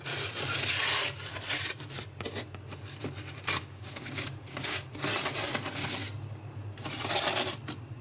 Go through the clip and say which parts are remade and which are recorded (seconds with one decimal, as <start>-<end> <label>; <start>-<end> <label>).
0.0-3.6 recorded; 3.6-5.0 remade; 5.0-8.0 recorded